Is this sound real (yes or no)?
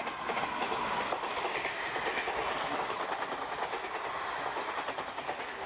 yes